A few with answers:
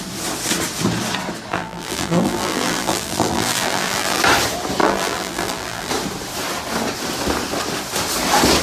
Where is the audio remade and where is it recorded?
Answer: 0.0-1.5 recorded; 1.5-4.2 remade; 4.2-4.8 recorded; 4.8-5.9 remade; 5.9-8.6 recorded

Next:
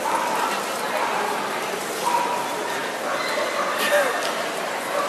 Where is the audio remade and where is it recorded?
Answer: 0.0-5.1 recorded

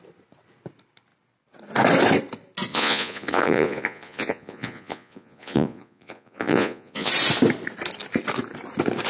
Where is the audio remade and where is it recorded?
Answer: 0.0-2.7 recorded; 2.7-7.1 remade; 7.1-9.1 recorded

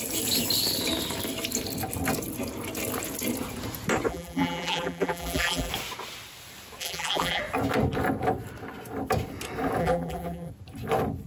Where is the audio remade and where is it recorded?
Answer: 0.0-4.1 recorded; 4.1-5.7 remade; 5.7-6.8 recorded; 6.8-7.4 remade; 7.4-9.8 recorded; 9.8-10.5 remade; 10.5-11.3 recorded

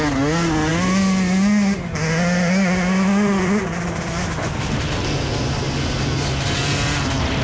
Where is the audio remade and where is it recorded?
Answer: 0.0-7.4 recorded